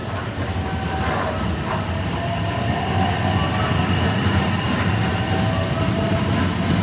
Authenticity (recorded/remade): recorded